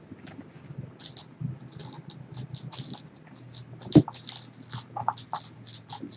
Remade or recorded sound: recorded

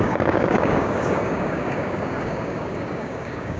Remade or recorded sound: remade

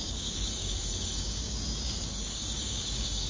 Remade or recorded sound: remade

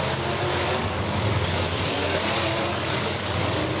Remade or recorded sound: remade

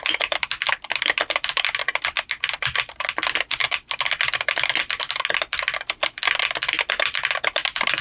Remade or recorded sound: recorded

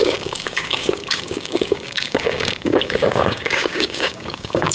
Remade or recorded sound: remade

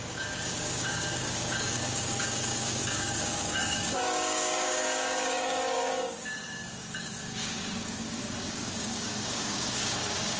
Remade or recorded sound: remade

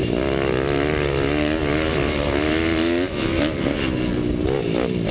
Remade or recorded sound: recorded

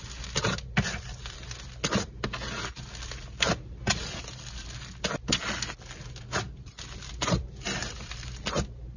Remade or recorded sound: recorded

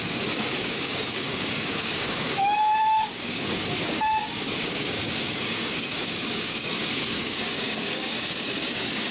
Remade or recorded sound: remade